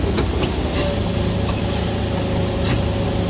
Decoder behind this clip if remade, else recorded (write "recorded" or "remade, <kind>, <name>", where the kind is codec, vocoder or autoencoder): recorded